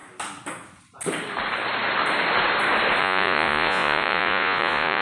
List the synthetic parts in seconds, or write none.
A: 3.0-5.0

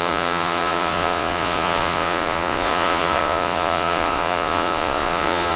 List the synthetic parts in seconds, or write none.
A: 0.0-5.6

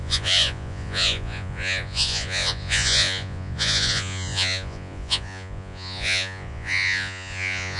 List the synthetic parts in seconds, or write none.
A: 0.0-7.8

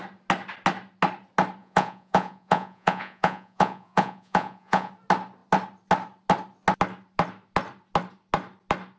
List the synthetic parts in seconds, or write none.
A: 1.6-4.9

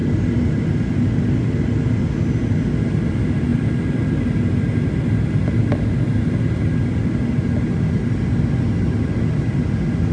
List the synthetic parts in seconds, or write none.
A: none

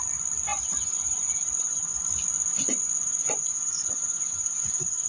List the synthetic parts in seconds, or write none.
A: 0.5-2.0; 2.5-5.1